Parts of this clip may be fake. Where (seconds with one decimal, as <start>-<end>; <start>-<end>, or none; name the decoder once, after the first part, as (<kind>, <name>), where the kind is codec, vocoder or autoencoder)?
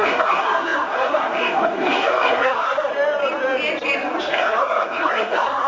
0.0-2.9 (codec, SNAC); 4.2-5.7